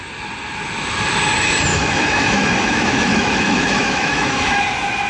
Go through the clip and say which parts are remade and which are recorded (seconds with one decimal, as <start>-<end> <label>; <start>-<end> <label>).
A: 0.0-1.7 recorded; 1.7-4.6 remade; 4.6-5.1 recorded